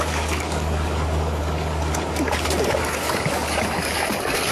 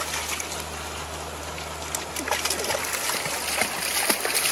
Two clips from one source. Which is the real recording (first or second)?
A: second